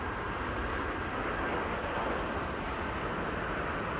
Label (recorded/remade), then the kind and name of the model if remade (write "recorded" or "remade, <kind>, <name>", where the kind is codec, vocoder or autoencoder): recorded